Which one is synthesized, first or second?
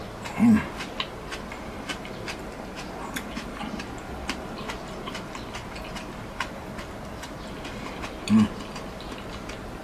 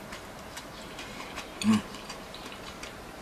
second